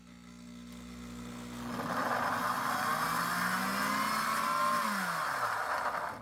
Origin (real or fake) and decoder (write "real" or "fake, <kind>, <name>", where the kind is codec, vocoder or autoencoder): real